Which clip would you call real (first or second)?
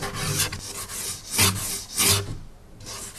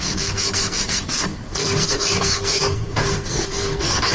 first